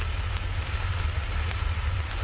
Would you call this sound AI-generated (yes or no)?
no